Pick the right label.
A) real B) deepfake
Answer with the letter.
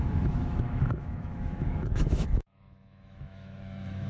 B